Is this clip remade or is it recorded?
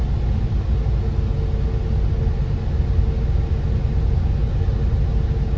recorded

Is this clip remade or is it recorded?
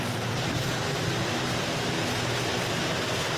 remade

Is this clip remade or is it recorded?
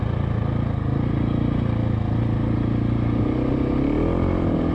recorded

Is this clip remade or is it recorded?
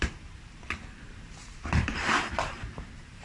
remade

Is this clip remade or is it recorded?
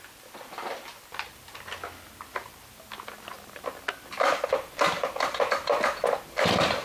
remade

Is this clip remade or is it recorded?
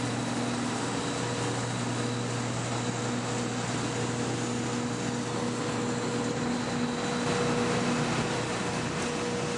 recorded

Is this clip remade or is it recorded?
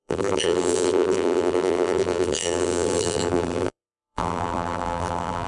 remade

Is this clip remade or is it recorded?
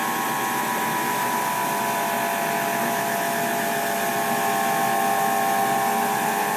recorded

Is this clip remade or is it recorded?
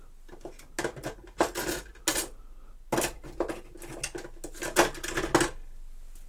recorded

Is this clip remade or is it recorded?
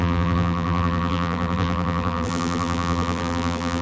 remade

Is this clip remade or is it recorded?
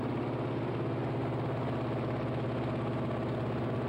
recorded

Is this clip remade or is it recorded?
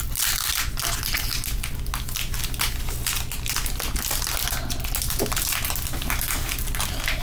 recorded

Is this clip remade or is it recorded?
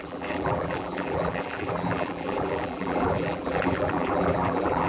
remade